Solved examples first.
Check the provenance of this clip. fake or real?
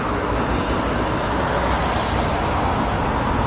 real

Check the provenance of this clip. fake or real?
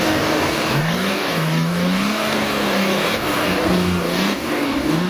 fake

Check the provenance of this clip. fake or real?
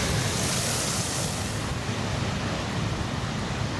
real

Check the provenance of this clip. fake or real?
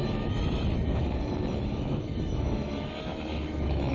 fake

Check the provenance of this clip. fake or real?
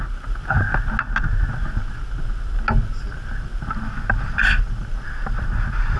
real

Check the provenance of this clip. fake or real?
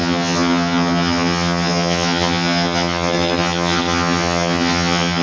fake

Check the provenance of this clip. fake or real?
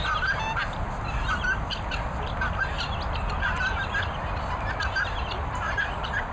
real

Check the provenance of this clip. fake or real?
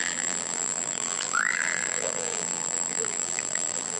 fake